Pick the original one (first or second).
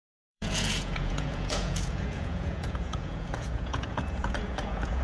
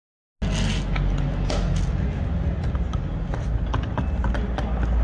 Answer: second